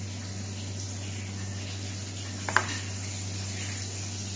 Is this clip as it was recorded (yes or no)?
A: yes